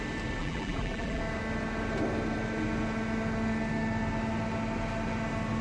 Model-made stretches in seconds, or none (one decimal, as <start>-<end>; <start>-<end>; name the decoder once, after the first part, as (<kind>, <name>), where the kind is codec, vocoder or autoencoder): 0.4-1.2 (vocoder, BigVGAN v2)